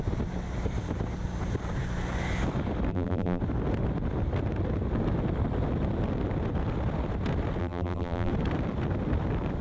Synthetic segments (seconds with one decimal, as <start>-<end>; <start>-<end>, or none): 2.9-3.4; 7.6-8.3

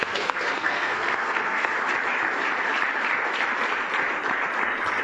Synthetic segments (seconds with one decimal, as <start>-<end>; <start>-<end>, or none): 0.0-1.7

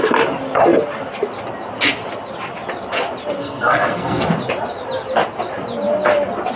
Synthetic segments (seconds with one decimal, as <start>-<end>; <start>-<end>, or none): 3.4-4.2

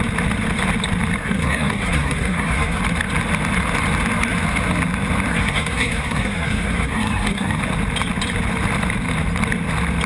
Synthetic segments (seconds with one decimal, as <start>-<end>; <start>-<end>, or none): 1.2-2.8; 5.3-7.6

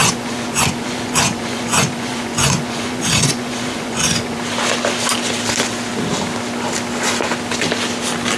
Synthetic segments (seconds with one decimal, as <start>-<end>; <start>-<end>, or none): 0.0-4.4